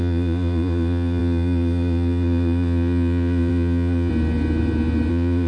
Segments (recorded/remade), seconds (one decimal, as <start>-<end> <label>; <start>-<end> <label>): 0.0-4.1 remade; 4.1-5.1 recorded; 5.1-5.5 remade